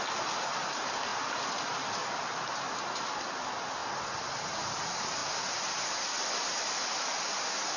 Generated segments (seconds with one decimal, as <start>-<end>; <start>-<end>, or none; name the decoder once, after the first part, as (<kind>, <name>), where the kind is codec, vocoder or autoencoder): none